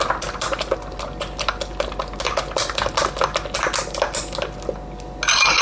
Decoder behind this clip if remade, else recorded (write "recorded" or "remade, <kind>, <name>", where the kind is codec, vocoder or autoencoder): recorded